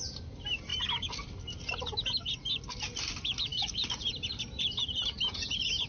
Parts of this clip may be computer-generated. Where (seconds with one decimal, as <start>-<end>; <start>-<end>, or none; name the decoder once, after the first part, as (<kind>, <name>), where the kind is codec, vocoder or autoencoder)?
3.5-4.4 (vocoder, BigVGAN v2)